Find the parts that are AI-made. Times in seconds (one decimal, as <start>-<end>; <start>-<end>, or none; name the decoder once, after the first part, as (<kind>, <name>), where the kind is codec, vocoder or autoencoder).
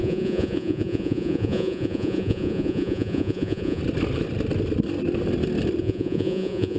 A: 0.0-3.8 (vocoder, Vocos); 5.8-6.8